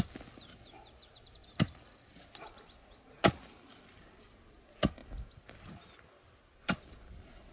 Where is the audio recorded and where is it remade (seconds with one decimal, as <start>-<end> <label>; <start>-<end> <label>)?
0.0-7.5 recorded